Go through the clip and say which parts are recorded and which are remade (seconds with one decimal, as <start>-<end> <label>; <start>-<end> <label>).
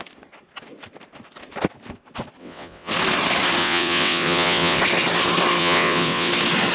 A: 0.0-2.4 recorded; 2.4-2.9 remade; 2.9-3.6 recorded; 3.6-4.8 remade; 4.8-5.6 recorded; 5.6-6.3 remade; 6.3-6.7 recorded